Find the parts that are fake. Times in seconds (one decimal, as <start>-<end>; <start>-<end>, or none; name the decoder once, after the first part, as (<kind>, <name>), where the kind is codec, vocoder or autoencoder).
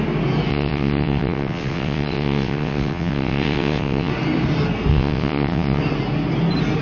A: 0.5-4.1 (vocoder, WaveNeXt); 4.9-5.8